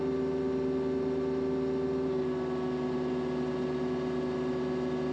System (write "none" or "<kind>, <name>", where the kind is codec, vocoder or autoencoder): none